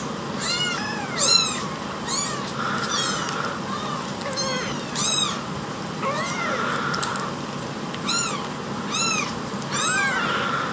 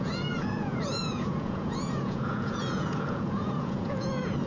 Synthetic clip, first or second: second